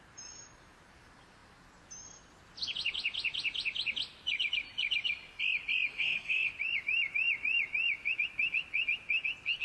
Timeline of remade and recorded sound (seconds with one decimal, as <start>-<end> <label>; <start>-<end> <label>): 0.0-5.9 recorded; 5.9-6.5 remade; 6.5-9.6 recorded